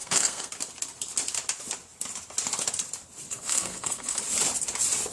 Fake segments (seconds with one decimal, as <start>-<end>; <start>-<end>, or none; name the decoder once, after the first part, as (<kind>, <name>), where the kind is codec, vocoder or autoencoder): 0.0-0.5 (codec, SNAC); 3.3-4.2